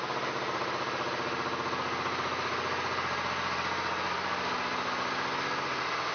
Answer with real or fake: real